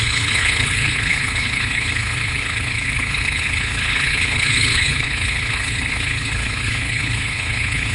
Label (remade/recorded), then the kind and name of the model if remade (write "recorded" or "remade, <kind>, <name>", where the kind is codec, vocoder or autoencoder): remade, codec, HILCodec